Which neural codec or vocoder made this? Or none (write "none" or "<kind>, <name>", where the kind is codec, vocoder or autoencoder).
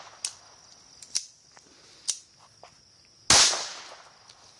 none